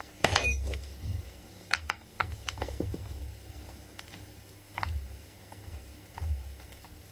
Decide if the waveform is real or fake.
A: fake